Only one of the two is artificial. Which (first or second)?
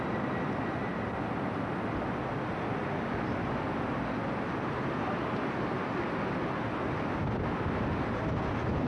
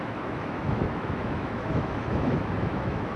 second